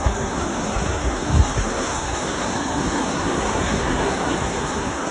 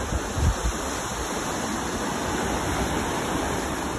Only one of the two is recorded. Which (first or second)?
second